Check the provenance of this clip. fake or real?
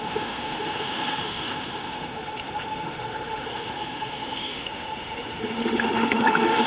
fake